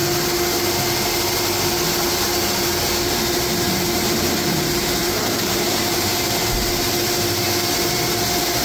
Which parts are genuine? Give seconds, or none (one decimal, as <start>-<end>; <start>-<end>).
0.0-5.0; 6.7-8.6